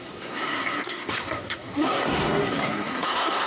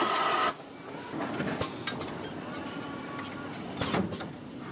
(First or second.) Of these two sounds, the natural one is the second